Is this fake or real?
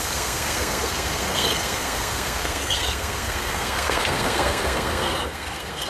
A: fake